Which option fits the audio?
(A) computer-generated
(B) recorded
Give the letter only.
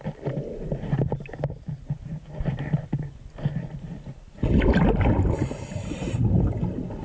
B